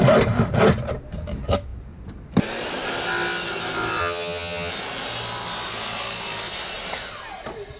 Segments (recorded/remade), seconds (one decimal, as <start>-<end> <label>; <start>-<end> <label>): 0.0-4.0 recorded; 4.0-4.7 remade; 4.7-7.8 recorded